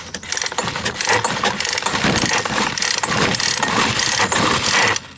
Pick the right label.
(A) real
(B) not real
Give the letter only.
A